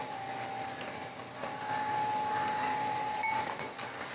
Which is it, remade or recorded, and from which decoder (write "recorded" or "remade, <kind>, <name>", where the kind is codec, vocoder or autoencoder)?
recorded